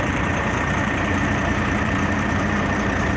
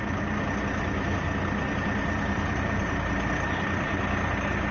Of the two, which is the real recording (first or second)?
second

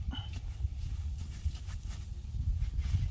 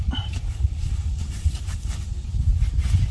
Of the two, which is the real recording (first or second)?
first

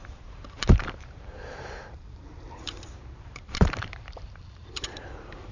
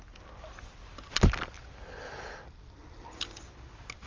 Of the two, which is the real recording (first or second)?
second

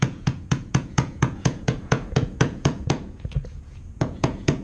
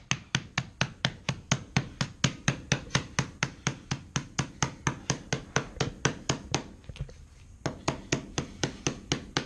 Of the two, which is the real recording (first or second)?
second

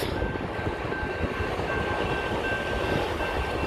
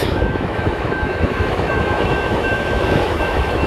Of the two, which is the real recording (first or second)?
first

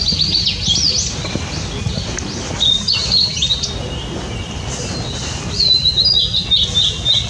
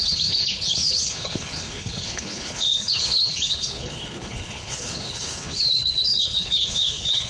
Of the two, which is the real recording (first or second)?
first